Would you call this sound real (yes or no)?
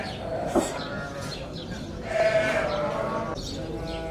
yes